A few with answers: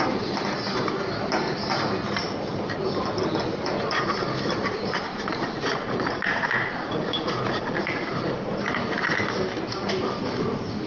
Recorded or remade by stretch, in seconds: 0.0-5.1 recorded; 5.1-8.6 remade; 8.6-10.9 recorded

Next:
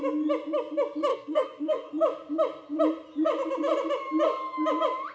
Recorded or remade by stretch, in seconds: 0.0-1.1 recorded; 1.1-1.9 remade; 1.9-5.1 recorded

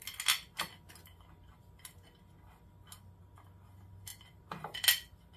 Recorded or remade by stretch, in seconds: 0.0-5.4 recorded